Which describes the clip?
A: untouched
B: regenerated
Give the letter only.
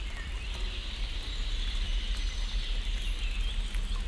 A